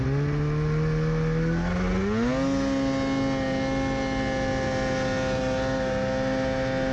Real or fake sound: real